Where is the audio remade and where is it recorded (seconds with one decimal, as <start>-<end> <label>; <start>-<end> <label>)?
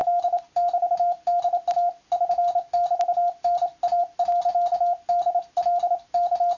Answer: 0.0-6.6 recorded